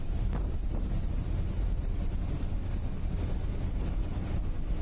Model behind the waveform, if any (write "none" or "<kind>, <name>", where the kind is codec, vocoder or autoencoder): none